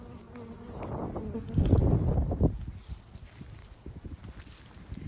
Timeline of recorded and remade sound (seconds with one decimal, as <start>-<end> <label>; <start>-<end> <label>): 0.0-5.1 recorded